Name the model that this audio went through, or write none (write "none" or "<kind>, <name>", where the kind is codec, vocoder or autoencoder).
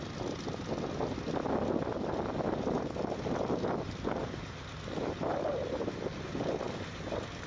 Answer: none